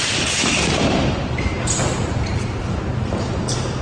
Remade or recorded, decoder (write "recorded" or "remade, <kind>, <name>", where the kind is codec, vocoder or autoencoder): remade, vocoder, BigVGAN v2